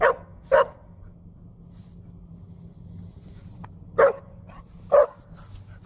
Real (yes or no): yes